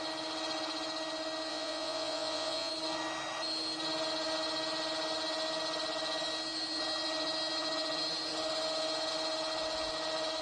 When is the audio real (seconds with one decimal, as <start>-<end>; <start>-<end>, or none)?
0.0-1.5; 2.7-10.4